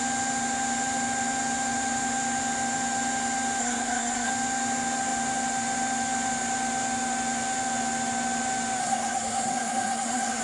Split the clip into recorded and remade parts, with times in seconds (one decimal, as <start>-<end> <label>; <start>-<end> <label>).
0.0-3.6 recorded; 3.6-4.3 remade; 4.3-8.8 recorded; 8.8-10.4 remade